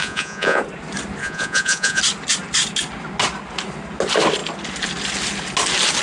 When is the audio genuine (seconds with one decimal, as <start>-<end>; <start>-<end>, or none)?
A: 0.6-1.2; 2.0-6.0